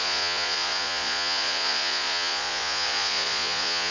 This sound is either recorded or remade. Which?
remade